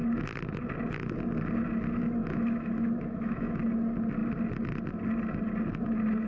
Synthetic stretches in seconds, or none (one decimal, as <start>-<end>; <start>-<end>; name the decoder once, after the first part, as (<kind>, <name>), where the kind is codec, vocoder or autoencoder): 2.2-3.6 (autoencoder, DAC-VAE)